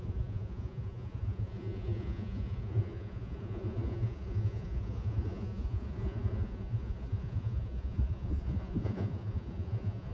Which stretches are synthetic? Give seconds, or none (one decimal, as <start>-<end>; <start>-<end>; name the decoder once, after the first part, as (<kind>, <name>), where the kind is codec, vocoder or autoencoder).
0.0-10.1 (vocoder, Vocos)